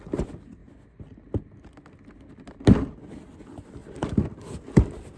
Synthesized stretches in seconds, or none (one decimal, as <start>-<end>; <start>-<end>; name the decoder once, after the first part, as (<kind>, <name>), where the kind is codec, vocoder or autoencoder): none